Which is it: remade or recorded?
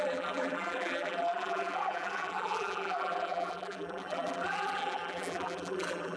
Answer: remade